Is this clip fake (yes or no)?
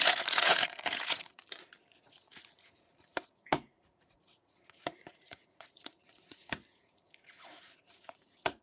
yes